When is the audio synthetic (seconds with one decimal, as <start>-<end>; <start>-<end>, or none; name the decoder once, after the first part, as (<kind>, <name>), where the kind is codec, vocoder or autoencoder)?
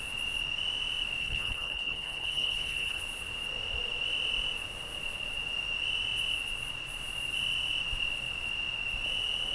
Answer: 1.2-3.0 (codec, HILCodec)